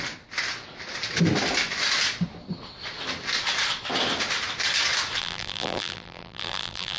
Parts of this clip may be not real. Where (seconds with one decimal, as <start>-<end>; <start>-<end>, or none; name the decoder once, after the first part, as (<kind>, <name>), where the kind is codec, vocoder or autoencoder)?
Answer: 5.2-7.0 (vocoder, BigVGAN v2)